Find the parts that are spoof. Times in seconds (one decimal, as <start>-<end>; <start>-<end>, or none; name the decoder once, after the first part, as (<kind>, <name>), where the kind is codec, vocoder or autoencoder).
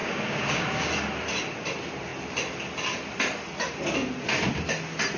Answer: 0.0-0.9 (codec, DAC)